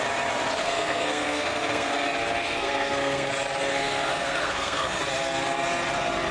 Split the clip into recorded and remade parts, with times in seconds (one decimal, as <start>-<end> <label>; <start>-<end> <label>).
0.0-0.6 recorded; 0.6-1.9 remade; 1.9-2.4 recorded; 2.4-3.3 remade; 3.3-3.7 recorded; 3.7-5.0 remade; 5.0-6.3 recorded